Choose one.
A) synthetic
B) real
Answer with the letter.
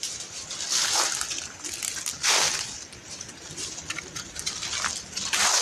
B